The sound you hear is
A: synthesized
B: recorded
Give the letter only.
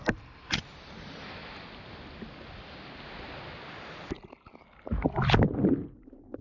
B